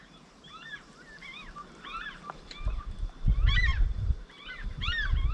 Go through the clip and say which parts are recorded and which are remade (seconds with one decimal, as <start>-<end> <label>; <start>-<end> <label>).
0.0-3.2 remade; 3.2-5.3 recorded